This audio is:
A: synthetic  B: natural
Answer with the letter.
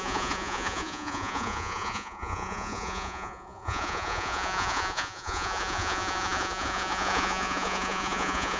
A